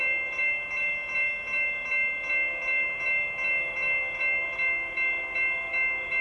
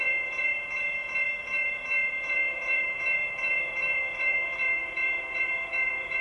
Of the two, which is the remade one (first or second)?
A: second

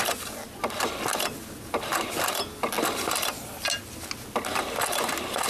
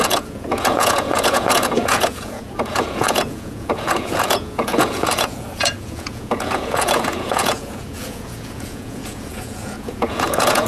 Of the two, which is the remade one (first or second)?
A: second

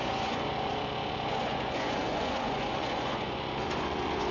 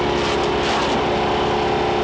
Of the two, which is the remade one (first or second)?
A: first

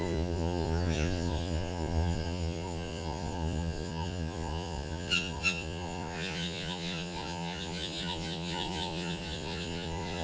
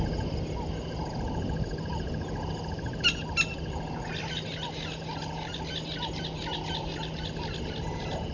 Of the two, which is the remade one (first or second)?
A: first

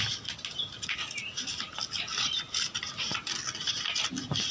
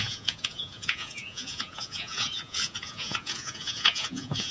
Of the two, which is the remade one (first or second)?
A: second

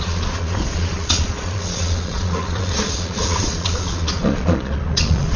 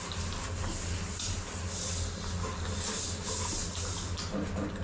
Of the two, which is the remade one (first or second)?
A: first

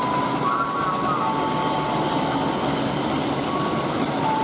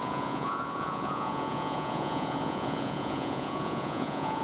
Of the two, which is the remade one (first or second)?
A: second